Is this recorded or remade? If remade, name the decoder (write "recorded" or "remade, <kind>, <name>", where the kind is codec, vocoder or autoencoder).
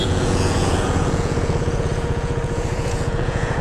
remade, vocoder, Vocos